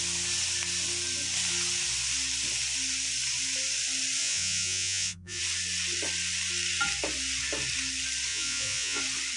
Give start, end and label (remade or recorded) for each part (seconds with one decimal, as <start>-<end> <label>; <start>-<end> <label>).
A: 0.0-4.2 recorded; 4.2-5.4 remade; 5.4-8.3 recorded; 8.3-9.0 remade; 9.0-9.4 recorded